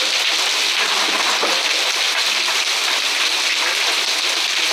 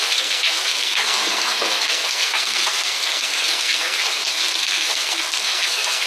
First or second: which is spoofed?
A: second